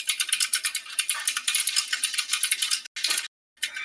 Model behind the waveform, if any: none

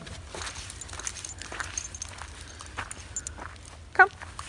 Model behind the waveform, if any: none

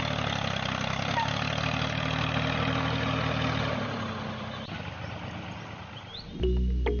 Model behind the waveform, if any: none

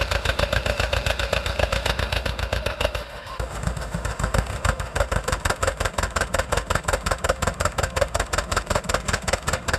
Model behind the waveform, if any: autoencoder, DAC-VAE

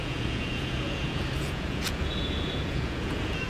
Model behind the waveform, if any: vocoder, Vocos